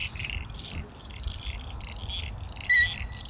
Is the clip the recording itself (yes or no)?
yes